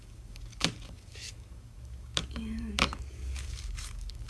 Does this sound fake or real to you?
fake